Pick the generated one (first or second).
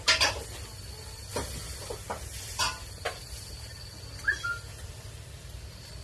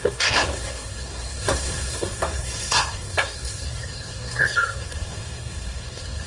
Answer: second